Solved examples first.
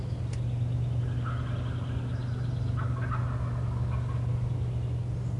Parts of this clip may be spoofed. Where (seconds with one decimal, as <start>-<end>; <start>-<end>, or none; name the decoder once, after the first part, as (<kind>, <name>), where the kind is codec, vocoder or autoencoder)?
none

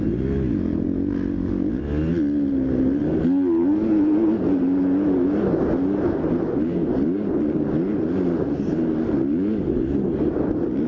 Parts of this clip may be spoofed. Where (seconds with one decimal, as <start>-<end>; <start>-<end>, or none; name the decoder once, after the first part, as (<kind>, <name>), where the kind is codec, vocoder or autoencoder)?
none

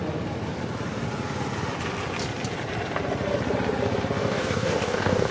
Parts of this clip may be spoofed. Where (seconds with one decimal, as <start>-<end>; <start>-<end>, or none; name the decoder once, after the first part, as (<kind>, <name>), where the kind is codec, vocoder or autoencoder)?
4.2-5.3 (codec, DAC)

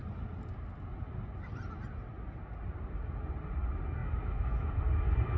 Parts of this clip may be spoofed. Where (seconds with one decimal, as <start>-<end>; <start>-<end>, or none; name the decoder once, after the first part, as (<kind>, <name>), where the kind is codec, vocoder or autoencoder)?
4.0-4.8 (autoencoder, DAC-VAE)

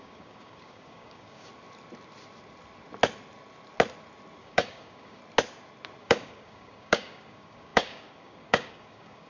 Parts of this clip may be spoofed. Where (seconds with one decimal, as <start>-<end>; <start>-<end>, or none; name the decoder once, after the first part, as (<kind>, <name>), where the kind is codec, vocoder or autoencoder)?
0.0-1.5 (codec, DAC); 4.4-5.2; 6.0-9.3

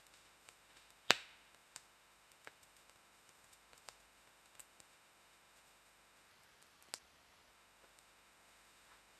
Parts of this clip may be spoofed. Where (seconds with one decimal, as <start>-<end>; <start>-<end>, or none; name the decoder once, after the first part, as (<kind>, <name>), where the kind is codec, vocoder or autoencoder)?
0.0-6.3 (autoencoder, DAC-VAE); 7.5-9.2

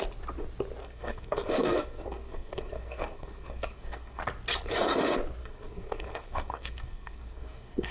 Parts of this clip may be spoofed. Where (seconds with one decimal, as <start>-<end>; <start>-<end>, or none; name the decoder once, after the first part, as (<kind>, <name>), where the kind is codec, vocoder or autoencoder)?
0.8-4.2 (codec, SNAC); 5.4-7.9